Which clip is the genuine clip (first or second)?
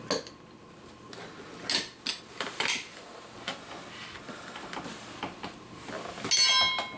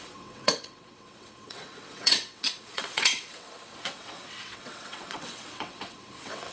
first